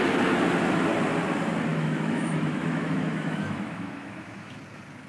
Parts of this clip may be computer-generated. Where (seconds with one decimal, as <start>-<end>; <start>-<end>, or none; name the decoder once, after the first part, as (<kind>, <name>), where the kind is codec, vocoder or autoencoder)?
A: 1.7-4.6 (autoencoder, DAC-VAE)